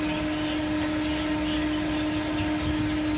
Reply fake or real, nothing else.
real